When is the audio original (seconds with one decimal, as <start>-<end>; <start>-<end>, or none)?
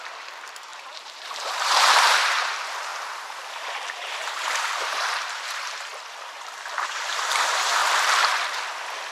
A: 2.9-3.5; 5.9-6.8; 7.8-9.1